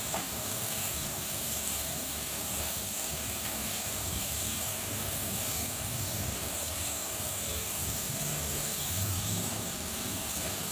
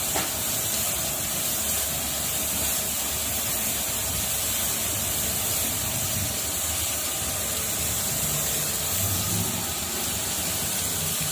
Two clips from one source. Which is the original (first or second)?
second